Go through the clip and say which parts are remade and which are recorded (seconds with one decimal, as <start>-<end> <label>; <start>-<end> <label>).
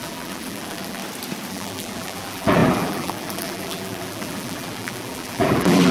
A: 0.0-1.0 remade; 1.0-1.5 recorded; 1.5-5.9 remade